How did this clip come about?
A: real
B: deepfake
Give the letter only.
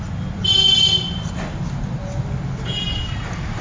A